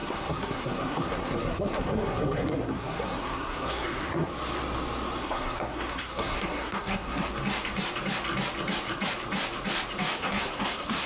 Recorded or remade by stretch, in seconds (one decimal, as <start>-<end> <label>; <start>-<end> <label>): 0.0-4.3 remade; 4.3-5.2 recorded; 5.2-7.3 remade; 7.3-10.1 recorded; 10.1-11.1 remade